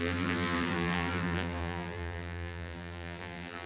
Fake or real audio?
fake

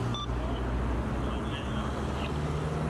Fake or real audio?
real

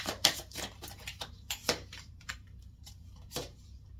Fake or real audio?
fake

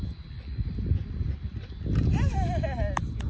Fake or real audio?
real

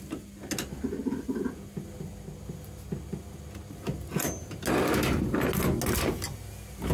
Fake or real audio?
real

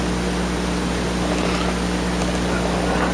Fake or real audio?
real